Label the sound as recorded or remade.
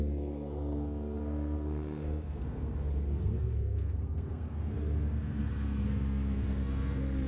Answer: remade